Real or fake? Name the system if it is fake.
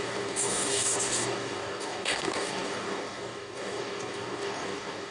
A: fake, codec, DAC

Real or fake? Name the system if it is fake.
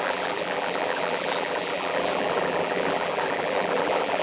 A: fake, vocoder, BigVGAN v2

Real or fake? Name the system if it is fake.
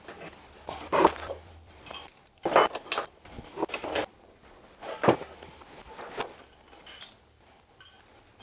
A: real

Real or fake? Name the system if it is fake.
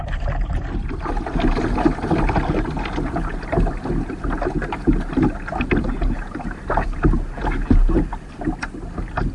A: real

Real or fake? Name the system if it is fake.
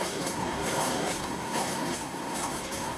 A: fake, codec, SNAC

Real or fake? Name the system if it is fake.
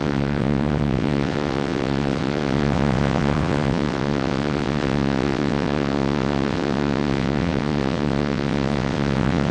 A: fake, vocoder, WaveNeXt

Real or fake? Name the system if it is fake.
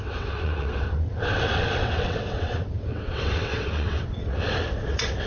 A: fake, vocoder, WaveNeXt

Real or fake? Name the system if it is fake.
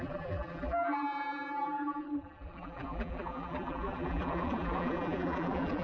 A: fake, vocoder, BigVGAN v2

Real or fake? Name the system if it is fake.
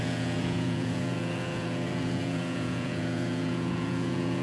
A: fake, vocoder, Vocos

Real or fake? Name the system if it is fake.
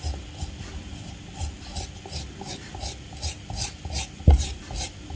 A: real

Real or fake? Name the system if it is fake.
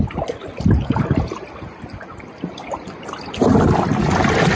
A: real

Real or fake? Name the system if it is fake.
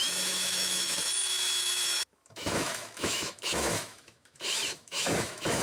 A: fake, autoencoder, DAC-VAE